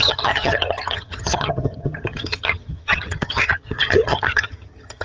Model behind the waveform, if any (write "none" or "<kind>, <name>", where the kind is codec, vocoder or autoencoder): vocoder, HiFi-GAN